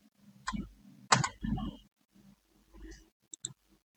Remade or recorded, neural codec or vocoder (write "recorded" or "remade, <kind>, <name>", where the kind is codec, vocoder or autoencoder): recorded